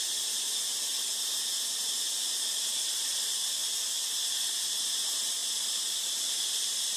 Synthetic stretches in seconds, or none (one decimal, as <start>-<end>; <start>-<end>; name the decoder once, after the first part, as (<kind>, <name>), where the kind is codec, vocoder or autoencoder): 2.7-3.6 (vocoder, BigVGAN v2); 4.5-7.0